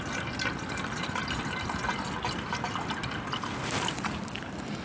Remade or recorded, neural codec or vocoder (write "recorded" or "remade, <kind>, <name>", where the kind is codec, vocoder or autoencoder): recorded